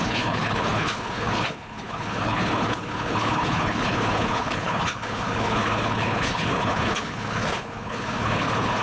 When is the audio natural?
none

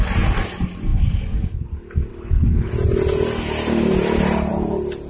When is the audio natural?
0.0-2.1; 2.7-5.1

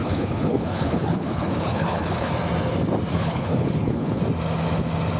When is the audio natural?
2.3-3.1; 4.2-5.2

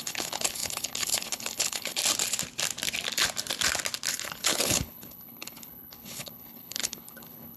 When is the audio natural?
2.0-4.1

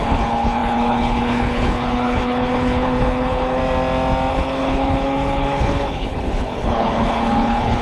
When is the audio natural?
3.6-4.3

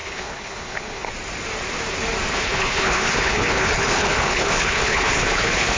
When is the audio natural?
1.1-2.3

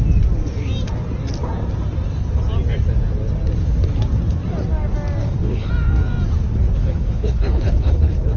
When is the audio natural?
0.0-5.2; 5.7-6.8

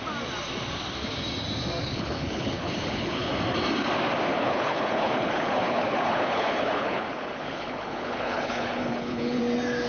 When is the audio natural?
0.0-1.8; 3.3-4.3; 9.4-9.9